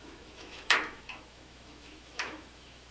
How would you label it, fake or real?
fake